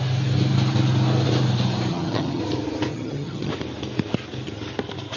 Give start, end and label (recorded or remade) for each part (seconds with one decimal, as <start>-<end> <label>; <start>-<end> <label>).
0.0-1.9 recorded; 1.9-2.4 remade; 2.4-2.9 recorded; 2.9-3.5 remade; 3.5-5.2 recorded